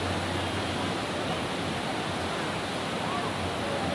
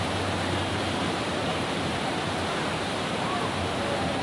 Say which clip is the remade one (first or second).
second